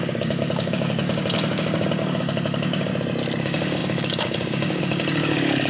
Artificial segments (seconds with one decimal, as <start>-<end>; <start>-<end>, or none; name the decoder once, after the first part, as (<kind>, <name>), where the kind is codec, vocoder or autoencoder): 0.0-2.9 (codec, DAC); 3.4-5.7